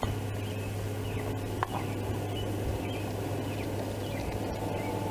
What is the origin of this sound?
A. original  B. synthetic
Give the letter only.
A